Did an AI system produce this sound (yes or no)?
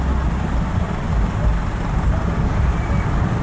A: no